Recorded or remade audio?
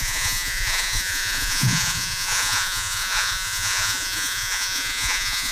remade